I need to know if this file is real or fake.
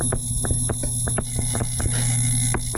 real